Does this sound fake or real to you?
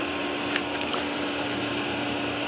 real